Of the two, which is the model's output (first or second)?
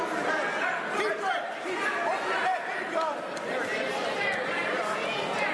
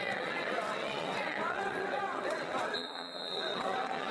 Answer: second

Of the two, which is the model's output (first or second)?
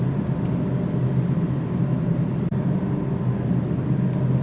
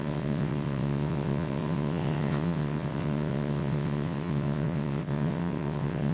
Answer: second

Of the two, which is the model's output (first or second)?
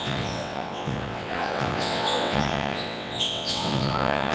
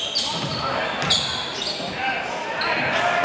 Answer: first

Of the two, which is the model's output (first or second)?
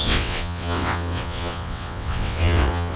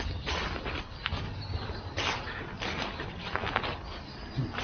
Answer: first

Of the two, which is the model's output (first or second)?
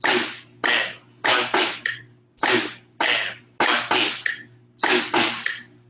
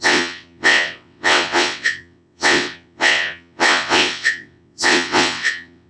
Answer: second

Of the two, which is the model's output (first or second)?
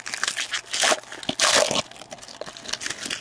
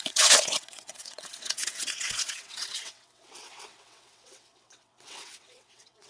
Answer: second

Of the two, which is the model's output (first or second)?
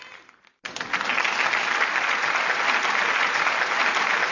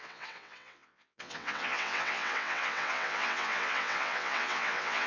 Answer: second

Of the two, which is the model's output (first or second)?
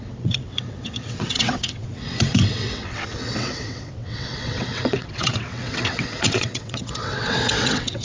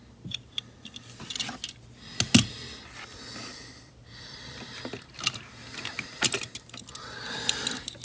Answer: first